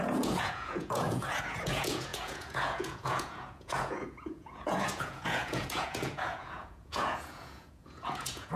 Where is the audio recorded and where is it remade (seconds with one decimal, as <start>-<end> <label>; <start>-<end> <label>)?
0.0-8.6 remade

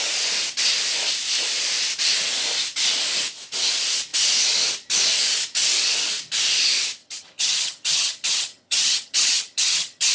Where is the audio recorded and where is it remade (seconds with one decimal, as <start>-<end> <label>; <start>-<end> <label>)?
0.0-7.0 recorded; 7.0-10.1 remade